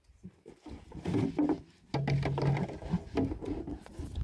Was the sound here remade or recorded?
recorded